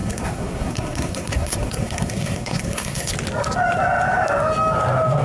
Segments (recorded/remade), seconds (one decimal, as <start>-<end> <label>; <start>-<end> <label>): 0.0-3.1 remade; 3.1-5.2 recorded